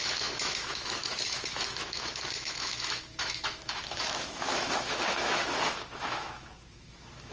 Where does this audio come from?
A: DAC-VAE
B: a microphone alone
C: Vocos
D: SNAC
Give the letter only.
A